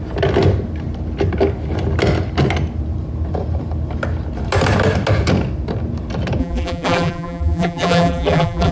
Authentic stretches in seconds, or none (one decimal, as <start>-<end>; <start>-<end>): 0.0-6.4